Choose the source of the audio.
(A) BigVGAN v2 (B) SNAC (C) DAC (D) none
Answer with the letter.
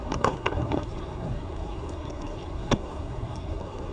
B